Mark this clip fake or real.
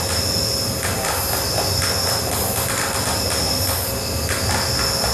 real